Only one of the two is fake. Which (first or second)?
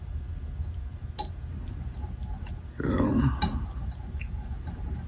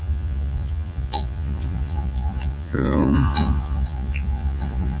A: second